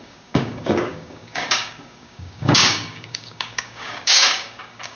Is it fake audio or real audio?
fake